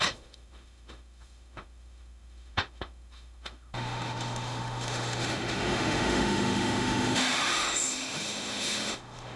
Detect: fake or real fake